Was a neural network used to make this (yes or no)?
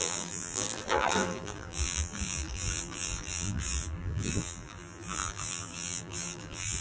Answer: yes